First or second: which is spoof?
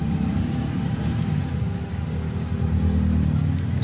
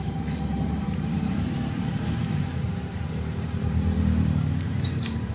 second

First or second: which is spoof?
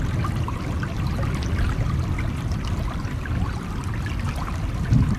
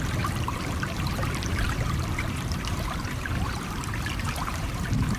second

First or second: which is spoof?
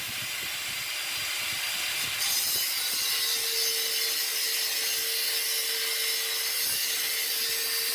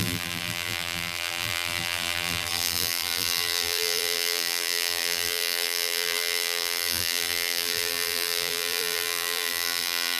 second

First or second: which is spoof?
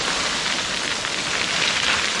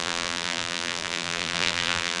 second